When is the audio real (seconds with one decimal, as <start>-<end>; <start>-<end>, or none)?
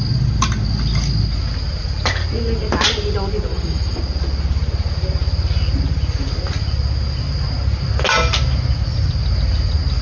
0.0-3.5; 4.0-10.0